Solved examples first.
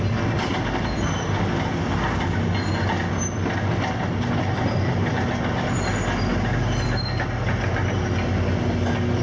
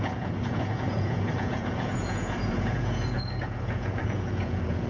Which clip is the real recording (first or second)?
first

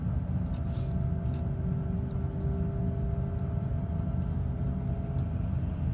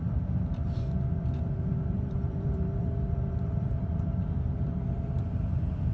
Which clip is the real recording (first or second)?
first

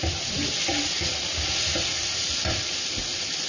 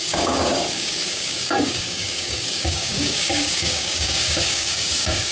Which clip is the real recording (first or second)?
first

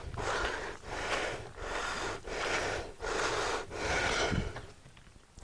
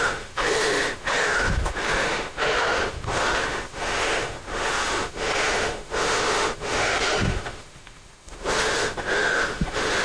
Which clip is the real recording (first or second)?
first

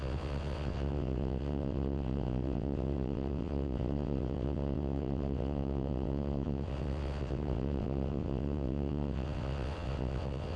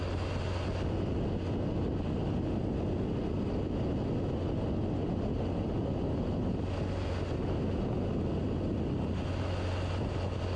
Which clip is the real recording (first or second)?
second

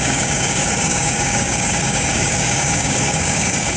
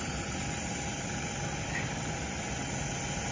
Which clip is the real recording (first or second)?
second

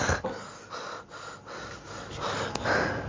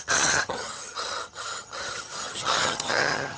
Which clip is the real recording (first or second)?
first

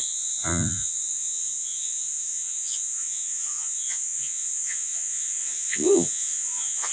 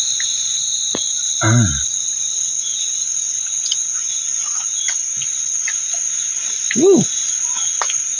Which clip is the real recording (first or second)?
second